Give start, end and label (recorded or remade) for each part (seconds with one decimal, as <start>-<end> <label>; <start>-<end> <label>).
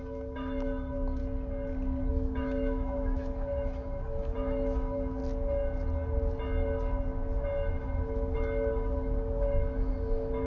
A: 0.0-1.2 remade; 1.2-2.1 recorded; 2.1-5.2 remade; 5.2-7.7 recorded; 7.7-10.5 remade